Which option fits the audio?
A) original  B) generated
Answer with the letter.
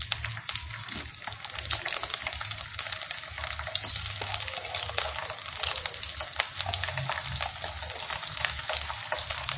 A